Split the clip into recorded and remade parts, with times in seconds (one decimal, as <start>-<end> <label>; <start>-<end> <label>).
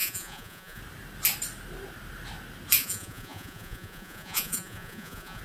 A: 0.0-0.8 remade; 0.8-2.8 recorded; 2.8-5.4 remade